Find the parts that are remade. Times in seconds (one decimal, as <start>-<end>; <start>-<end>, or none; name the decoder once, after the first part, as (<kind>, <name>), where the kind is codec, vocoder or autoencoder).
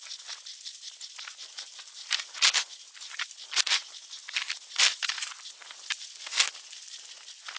1.4-3.8 (vocoder, BigVGAN v2)